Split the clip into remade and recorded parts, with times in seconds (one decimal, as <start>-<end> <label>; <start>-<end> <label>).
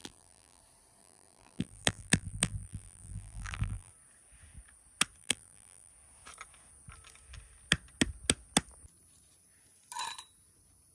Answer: 0.0-0.6 remade; 0.6-1.0 recorded; 1.0-3.9 remade; 3.9-5.2 recorded; 5.2-5.9 remade; 5.9-10.9 recorded